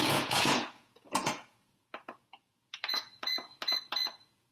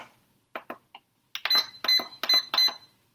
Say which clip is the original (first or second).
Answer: second